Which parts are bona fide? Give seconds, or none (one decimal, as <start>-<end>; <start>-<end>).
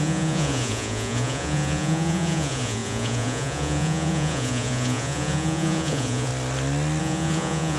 6.3-7.0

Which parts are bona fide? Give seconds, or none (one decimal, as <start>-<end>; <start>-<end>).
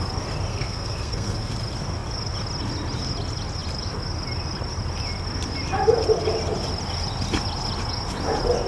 0.0-0.5; 1.5-8.7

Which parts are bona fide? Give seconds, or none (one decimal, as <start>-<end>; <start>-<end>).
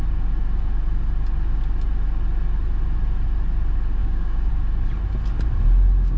0.0-4.0; 4.5-6.2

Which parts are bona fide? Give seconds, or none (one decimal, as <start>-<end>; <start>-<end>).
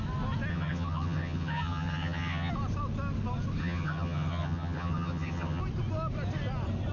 0.0-0.5; 2.5-3.6; 5.6-6.9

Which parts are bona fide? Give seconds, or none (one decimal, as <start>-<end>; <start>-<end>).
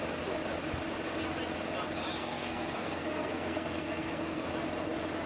0.0-2.2; 4.5-5.3